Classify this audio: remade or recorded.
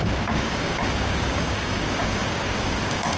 remade